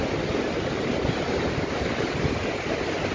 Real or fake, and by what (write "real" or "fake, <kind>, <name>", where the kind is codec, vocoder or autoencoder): real